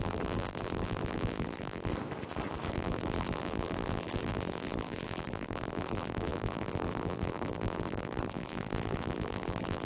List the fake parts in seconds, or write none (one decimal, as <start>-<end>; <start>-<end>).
0.0-1.9; 2.7-9.9